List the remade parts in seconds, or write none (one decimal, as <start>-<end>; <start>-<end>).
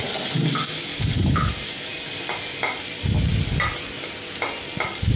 0.9-1.5